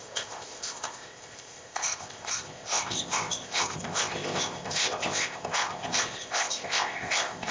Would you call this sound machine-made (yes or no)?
yes